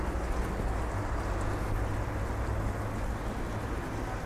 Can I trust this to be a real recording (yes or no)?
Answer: yes